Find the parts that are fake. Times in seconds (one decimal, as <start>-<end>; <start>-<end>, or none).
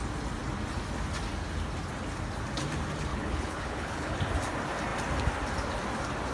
3.1-4.2